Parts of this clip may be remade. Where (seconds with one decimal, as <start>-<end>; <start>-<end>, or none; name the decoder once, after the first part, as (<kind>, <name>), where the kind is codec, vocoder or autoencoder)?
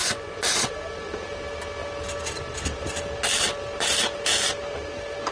0.0-0.7 (vocoder, Vocos)